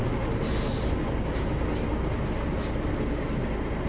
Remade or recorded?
recorded